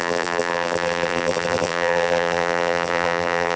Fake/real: fake